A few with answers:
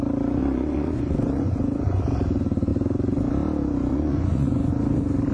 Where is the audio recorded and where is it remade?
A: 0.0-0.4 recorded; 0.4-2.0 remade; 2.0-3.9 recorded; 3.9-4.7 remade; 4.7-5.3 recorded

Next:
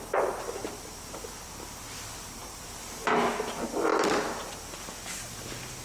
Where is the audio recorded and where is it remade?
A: 0.0-5.8 recorded

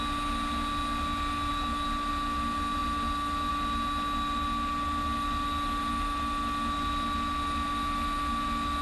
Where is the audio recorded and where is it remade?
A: 0.0-8.8 recorded

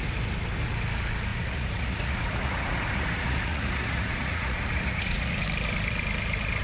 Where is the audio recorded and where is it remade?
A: 0.0-1.3 recorded; 1.3-5.3 remade; 5.3-6.6 recorded

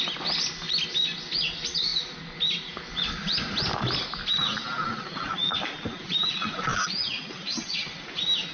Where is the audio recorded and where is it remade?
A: 0.0-8.5 recorded

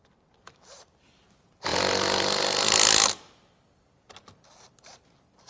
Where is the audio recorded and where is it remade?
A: 0.0-5.5 recorded